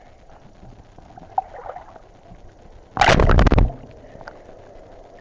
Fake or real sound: real